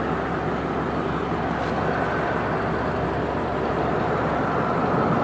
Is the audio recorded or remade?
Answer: recorded